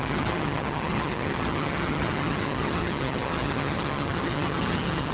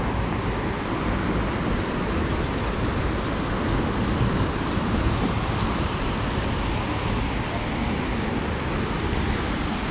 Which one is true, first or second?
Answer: second